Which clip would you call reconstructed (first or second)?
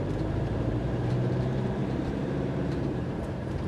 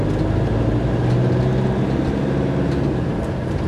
first